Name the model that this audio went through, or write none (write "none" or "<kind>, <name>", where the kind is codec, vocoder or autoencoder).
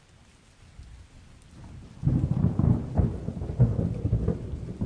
none